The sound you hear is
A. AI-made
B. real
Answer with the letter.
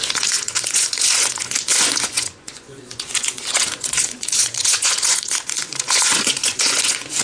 A